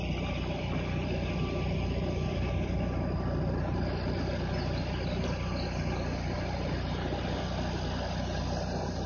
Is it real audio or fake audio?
real